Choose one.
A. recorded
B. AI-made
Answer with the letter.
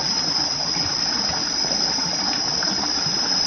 A